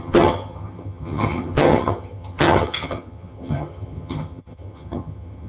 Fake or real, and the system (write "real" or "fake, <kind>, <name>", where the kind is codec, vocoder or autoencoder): fake, vocoder, HiFi-GAN